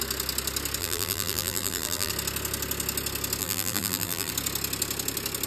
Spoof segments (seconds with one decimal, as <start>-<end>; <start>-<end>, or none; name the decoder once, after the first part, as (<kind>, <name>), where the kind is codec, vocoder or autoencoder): 0.8-2.1 (vocoder, BigVGAN v2); 3.4-4.3